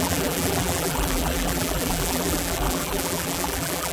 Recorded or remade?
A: remade